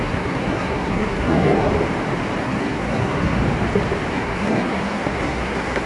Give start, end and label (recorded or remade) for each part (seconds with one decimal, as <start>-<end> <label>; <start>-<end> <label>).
0.0-1.7 remade; 1.7-2.4 recorded; 2.4-3.4 remade; 3.4-4.1 recorded; 4.1-5.9 remade